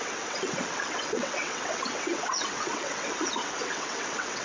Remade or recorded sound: remade